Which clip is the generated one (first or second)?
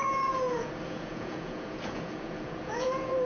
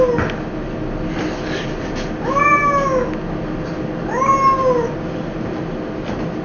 first